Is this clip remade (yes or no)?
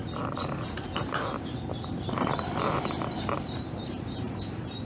yes